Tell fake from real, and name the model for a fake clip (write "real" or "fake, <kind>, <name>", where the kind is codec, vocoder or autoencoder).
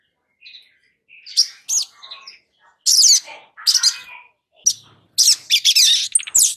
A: real